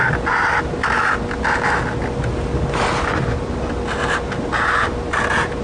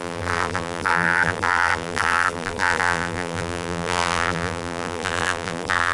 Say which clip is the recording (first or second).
first